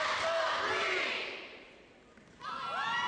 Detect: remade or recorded recorded